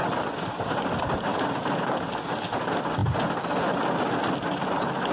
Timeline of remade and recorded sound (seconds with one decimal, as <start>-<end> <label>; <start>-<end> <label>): 0.0-5.1 recorded